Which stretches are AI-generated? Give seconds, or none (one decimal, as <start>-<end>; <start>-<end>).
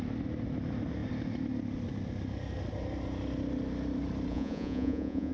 4.3-5.3